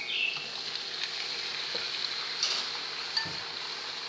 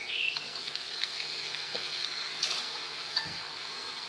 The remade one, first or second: second